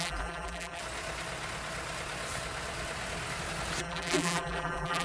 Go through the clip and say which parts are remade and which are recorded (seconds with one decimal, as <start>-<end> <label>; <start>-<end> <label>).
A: 0.0-0.8 remade; 0.8-3.8 recorded; 3.8-5.0 remade